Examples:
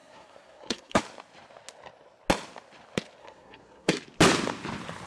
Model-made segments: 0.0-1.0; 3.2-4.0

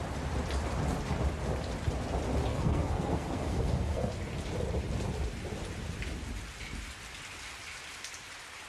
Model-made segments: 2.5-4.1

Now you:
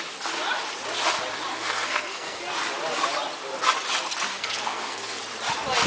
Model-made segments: 1.5-2.4; 4.3-5.2

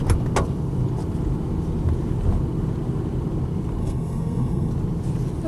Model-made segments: 3.8-4.7